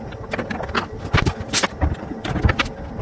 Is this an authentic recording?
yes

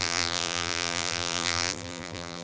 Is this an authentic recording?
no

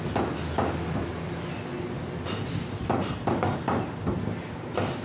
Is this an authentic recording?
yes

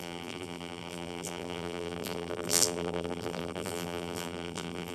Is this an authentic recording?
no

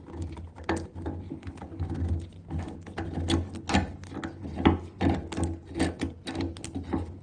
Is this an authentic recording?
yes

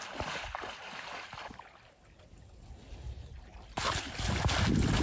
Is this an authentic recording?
yes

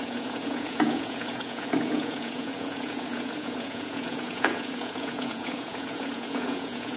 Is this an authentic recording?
no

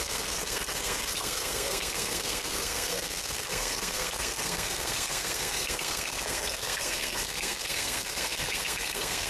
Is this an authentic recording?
no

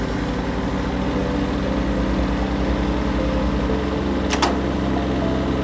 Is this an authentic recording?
yes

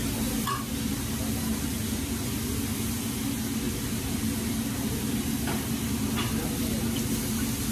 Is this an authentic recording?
yes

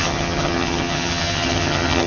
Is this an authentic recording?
no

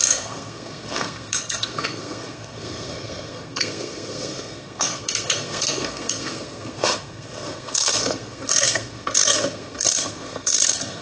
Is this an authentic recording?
no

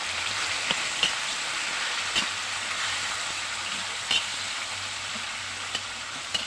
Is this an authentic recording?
yes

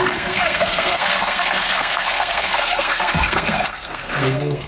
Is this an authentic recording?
no